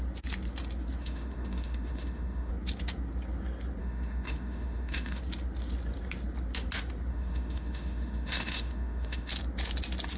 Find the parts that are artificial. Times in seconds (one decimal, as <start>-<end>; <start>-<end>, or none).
1.0-2.5; 3.8-5.2; 7.1-9.3